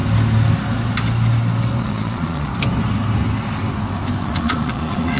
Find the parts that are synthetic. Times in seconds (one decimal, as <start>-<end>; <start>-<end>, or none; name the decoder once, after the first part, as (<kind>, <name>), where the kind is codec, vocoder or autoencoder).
1.8-2.5 (vocoder, Vocos); 4.2-5.2